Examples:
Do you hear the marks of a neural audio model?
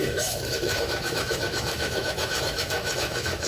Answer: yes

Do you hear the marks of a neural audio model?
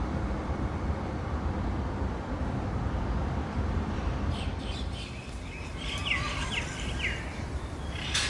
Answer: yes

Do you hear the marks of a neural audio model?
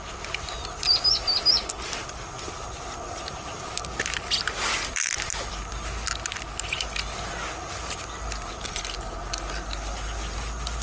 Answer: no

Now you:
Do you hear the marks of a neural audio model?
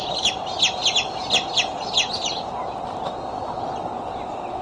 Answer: no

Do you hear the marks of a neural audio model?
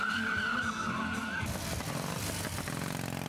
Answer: no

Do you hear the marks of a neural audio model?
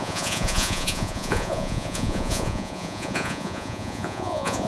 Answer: yes